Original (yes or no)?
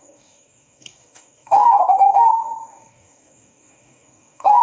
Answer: no